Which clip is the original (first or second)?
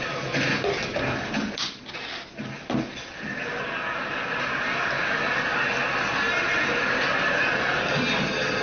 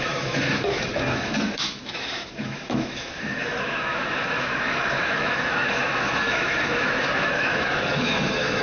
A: first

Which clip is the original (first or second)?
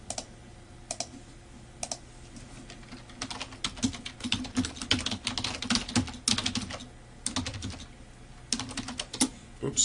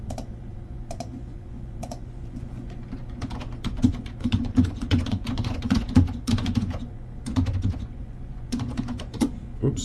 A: first